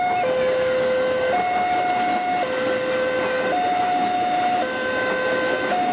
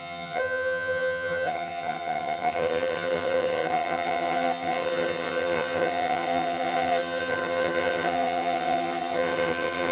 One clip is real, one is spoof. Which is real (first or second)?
first